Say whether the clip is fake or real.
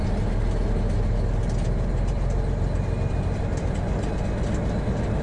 real